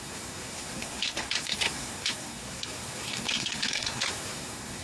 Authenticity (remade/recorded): remade